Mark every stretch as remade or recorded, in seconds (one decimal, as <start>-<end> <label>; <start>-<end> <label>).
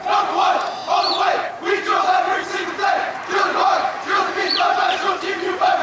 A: 0.0-0.8 remade; 0.8-1.5 recorded; 1.5-5.8 remade